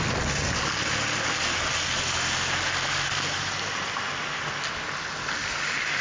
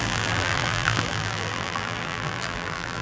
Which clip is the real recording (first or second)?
first